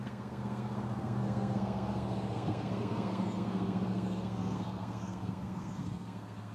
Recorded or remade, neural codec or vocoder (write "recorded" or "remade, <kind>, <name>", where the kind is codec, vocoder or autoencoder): remade, codec, SNAC